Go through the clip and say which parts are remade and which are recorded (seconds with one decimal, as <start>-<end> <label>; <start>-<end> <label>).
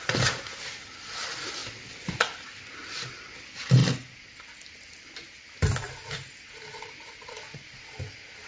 0.0-8.5 recorded